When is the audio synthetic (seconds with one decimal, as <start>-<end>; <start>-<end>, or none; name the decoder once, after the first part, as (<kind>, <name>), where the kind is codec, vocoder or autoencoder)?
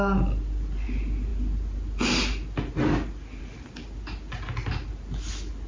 none